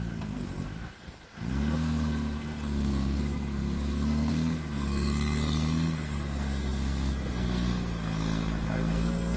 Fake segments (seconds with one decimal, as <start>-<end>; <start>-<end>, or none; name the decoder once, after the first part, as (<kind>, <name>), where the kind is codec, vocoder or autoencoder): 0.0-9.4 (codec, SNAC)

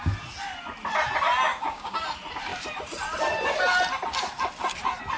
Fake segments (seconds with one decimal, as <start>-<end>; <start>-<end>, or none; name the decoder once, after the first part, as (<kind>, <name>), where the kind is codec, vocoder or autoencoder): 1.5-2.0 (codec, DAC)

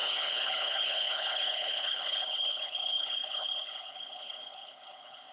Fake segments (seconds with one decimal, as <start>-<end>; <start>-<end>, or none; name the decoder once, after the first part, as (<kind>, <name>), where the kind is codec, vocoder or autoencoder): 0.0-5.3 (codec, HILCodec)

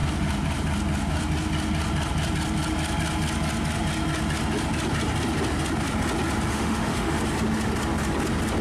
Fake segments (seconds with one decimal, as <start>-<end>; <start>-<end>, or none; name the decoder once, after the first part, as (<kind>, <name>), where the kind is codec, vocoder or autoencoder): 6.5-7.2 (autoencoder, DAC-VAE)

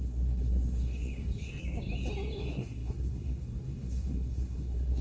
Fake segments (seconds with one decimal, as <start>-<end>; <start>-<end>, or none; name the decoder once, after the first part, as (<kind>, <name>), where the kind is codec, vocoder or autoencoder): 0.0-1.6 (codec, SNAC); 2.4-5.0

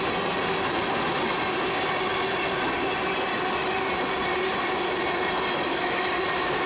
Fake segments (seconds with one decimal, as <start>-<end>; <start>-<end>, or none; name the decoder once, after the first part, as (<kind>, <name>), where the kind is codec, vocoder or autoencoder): 5.7-6.2 (autoencoder, DAC-VAE)

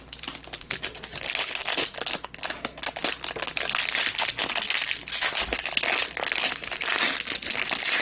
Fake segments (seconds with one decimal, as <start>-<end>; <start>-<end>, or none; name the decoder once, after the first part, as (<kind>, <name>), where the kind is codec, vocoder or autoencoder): none